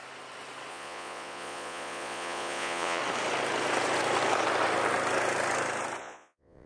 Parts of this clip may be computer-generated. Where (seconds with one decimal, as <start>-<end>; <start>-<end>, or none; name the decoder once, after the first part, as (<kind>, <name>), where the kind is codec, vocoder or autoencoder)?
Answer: 0.7-3.0 (vocoder, Vocos); 6.0-6.7